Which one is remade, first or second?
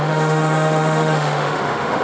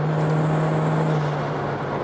first